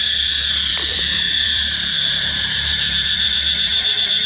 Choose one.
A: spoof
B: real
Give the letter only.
A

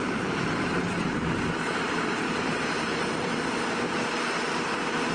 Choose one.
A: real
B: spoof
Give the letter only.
B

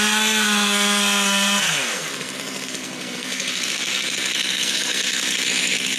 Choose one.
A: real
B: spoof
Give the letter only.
B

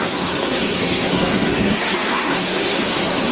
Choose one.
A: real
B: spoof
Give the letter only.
B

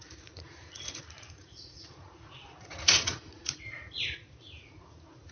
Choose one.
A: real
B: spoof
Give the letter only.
B